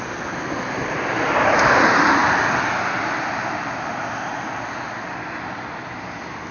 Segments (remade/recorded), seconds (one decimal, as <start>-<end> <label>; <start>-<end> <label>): 0.0-6.5 recorded